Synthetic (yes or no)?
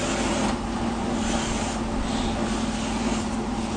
no